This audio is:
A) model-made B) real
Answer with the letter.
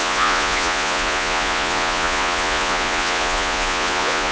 A